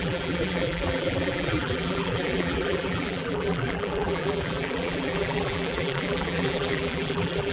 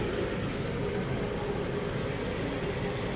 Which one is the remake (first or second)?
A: first